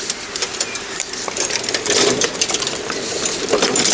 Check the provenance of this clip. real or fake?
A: fake